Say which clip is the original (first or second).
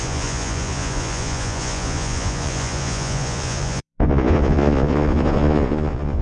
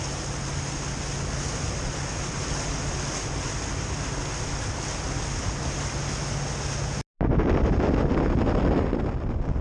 second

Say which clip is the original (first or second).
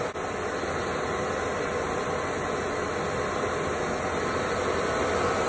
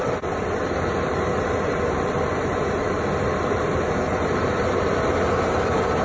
first